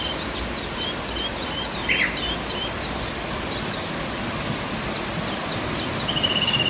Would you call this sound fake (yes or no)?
no